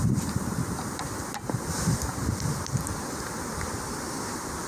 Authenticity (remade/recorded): remade